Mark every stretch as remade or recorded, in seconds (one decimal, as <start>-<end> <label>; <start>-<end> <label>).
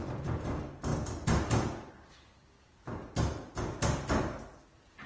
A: 0.0-5.1 recorded